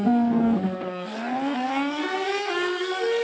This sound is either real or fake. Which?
fake